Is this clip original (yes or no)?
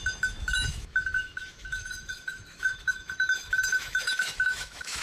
no